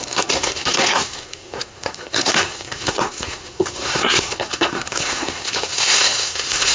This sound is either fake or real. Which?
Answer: fake